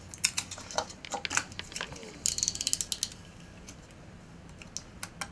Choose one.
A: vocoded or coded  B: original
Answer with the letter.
B